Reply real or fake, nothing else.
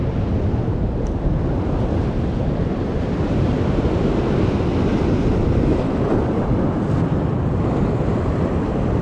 real